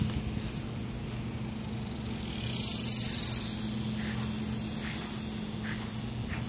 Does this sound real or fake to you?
real